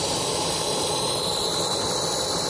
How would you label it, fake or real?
fake